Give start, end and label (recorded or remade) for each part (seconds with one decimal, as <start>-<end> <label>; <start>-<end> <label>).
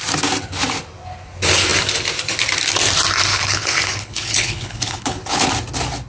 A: 0.0-3.3 recorded; 3.3-5.5 remade; 5.5-6.1 recorded